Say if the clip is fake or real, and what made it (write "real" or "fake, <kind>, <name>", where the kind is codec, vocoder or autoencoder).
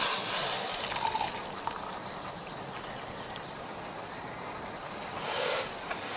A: real